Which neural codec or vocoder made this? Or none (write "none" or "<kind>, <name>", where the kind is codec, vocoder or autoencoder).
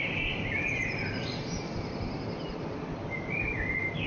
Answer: vocoder, BigVGAN v2